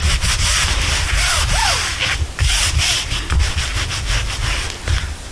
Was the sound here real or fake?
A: real